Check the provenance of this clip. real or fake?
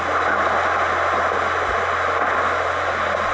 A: real